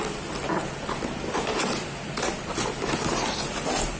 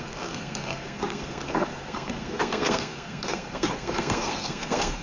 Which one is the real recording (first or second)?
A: first